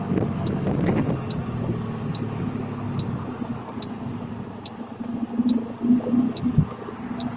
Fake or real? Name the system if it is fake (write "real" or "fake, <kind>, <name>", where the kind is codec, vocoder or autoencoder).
real